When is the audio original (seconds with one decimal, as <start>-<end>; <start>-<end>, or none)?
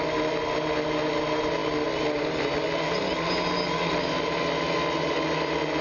0.0-5.8